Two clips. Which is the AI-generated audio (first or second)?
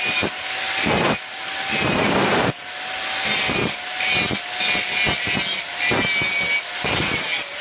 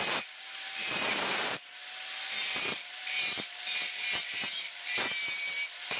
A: second